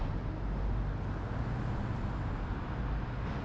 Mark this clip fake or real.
real